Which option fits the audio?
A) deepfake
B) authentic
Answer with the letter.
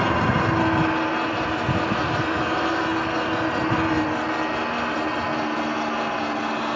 B